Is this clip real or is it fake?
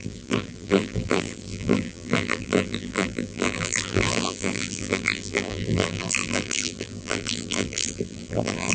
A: fake